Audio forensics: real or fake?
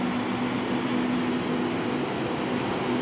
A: real